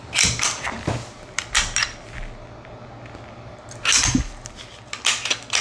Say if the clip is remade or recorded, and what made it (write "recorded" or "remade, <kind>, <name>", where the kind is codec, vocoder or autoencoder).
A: recorded